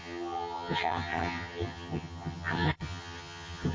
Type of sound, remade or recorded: remade